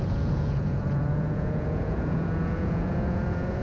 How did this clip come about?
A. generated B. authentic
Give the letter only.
A